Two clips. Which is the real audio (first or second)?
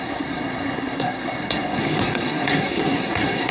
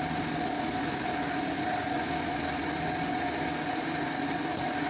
second